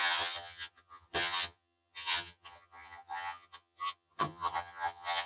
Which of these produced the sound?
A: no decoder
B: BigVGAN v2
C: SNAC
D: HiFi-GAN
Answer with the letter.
D